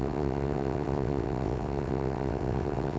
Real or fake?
fake